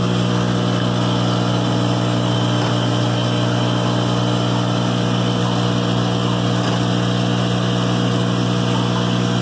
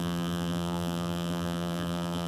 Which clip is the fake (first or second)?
second